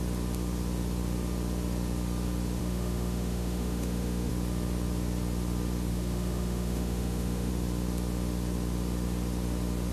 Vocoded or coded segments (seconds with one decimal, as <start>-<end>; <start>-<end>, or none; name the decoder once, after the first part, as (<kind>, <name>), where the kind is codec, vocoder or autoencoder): 2.6-4.3 (autoencoder, DAC-VAE); 5.9-7.5